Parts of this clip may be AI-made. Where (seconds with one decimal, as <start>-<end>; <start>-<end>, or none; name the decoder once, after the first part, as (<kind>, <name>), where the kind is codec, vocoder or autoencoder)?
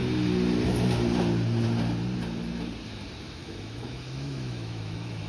3.2-5.3 (autoencoder, DAC-VAE)